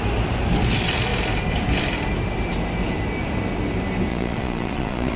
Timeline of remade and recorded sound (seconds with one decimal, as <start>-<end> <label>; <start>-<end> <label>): 0.0-4.1 recorded; 4.1-5.2 remade